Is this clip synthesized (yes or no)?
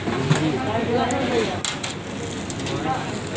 no